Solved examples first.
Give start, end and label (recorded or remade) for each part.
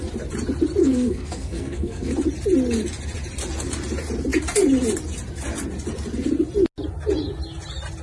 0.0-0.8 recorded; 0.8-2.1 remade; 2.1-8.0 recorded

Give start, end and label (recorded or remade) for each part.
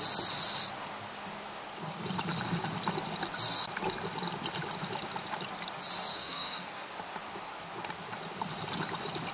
0.0-6.1 recorded; 6.1-6.9 remade; 6.9-9.3 recorded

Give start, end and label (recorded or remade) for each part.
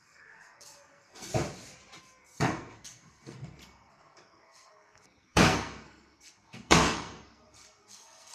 0.0-1.3 remade; 1.3-2.0 recorded; 2.0-8.3 remade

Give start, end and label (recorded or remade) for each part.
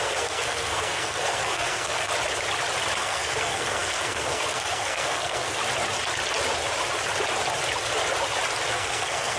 0.0-2.1 remade; 2.1-3.0 recorded; 3.0-5.6 remade; 5.6-8.7 recorded; 8.7-9.4 remade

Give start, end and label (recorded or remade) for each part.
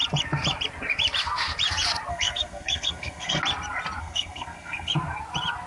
0.0-2.1 recorded; 2.1-3.4 remade; 3.4-4.0 recorded; 4.0-4.9 remade; 4.9-5.7 recorded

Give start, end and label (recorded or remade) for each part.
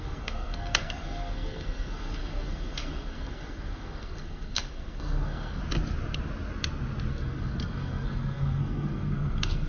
0.0-5.6 remade; 5.6-7.1 recorded; 7.1-9.7 remade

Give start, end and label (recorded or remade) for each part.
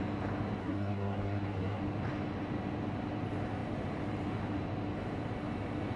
0.0-0.6 recorded; 0.6-1.8 remade; 1.8-6.0 recorded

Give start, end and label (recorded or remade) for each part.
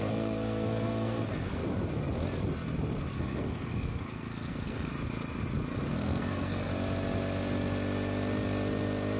0.0-1.6 remade; 1.6-3.1 recorded; 3.1-4.9 remade; 4.9-5.9 recorded; 5.9-6.7 remade; 6.7-9.2 recorded